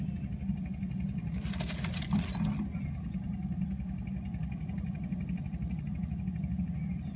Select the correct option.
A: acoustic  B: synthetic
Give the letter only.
A